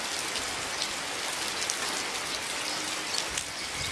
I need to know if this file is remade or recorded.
recorded